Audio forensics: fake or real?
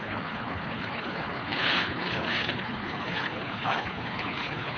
fake